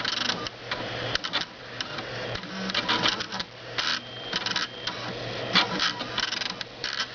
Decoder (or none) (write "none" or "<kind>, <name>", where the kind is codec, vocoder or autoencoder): none